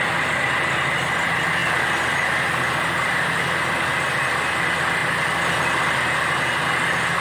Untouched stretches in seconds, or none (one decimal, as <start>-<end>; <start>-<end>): 0.0-7.2